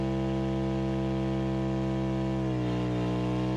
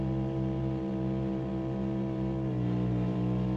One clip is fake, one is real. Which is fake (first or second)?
second